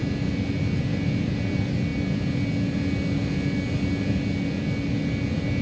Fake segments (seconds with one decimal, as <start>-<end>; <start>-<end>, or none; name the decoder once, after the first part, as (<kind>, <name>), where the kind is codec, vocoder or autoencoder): none